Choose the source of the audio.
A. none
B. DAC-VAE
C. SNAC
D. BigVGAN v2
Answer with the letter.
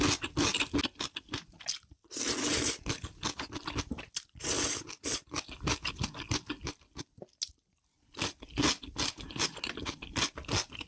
A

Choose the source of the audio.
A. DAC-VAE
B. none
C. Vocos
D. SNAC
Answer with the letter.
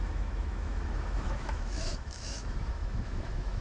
A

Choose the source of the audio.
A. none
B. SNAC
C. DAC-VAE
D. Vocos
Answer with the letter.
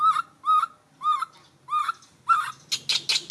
A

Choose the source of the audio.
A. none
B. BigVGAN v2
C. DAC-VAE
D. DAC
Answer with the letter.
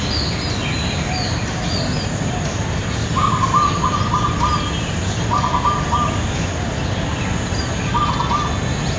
A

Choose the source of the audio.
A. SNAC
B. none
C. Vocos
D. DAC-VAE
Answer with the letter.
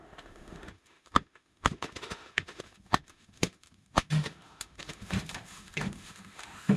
D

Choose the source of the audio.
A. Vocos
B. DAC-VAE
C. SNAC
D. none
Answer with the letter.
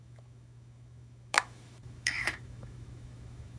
B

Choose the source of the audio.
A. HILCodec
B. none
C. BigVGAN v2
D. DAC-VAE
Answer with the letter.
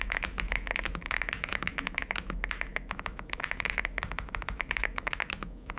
D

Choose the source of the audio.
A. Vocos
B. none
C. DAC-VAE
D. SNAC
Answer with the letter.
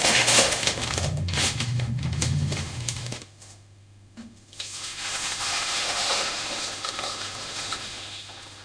C